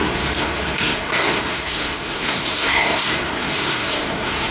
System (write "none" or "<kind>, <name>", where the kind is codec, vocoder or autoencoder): codec, SNAC